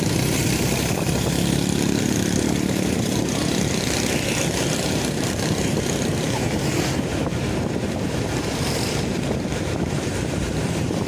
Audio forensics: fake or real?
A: fake